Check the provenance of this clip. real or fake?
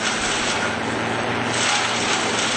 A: real